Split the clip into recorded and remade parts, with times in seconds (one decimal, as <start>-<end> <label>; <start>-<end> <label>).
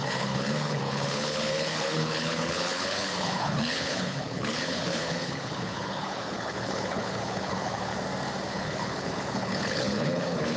0.0-7.9 remade; 7.9-8.5 recorded; 8.5-10.6 remade